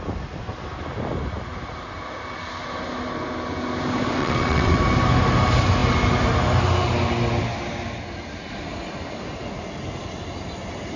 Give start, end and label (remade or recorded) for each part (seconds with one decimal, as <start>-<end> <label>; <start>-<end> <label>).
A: 0.0-4.2 recorded; 4.2-4.8 remade; 4.8-11.0 recorded